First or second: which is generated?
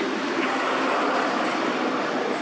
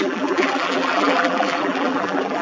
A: second